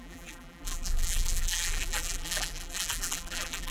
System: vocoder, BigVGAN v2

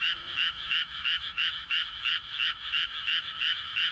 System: autoencoder, DAC-VAE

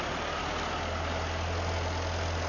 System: none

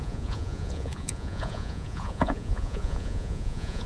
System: vocoder, Vocos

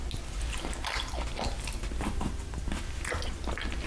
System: none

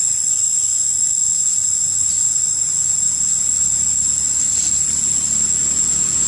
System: none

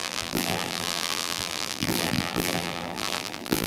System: vocoder, BigVGAN v2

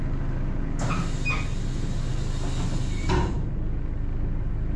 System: none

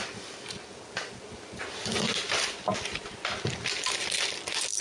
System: none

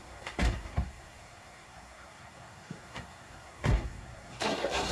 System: codec, SNAC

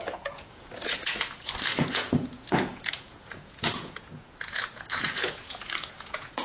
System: vocoder, Vocos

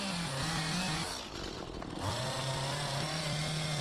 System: none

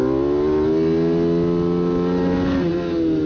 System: none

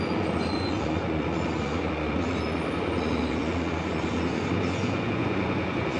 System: vocoder, Vocos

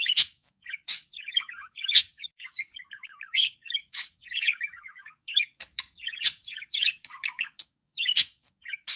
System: codec, DAC